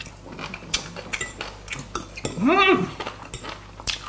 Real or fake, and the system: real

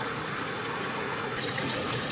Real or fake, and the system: fake, vocoder, Vocos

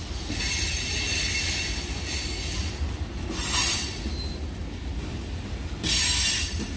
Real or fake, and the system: real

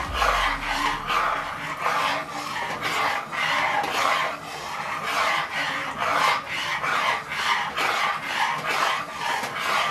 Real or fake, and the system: real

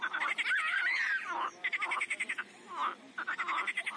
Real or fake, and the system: real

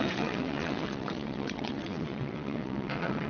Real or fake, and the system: fake, vocoder, WaveNeXt